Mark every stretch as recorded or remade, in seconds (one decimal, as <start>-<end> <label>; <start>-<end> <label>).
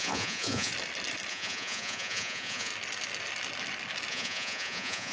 0.0-0.7 remade; 0.7-1.3 recorded; 1.3-2.7 remade; 2.7-4.1 recorded; 4.1-5.1 remade